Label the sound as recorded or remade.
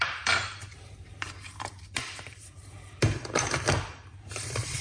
remade